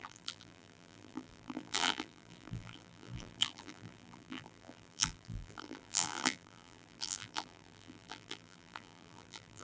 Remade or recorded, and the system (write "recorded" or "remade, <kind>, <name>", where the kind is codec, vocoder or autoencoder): remade, vocoder, BigVGAN v2